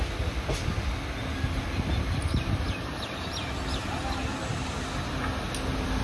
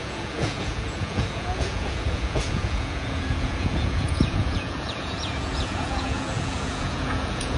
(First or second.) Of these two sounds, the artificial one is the second